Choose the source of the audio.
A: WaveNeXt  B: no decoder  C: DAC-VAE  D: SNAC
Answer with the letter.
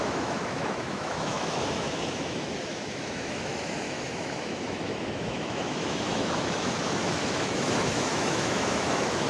C